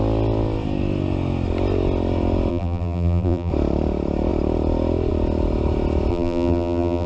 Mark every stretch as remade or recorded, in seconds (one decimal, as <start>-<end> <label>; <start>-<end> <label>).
0.0-2.5 recorded; 2.5-3.5 remade; 3.5-6.1 recorded; 6.1-7.1 remade